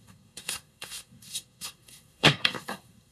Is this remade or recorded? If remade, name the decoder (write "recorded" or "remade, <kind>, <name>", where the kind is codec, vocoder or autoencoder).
remade, codec, SNAC